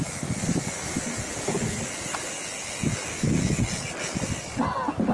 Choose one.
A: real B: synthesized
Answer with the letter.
A